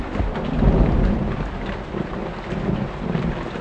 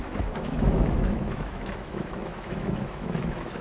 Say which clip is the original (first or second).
first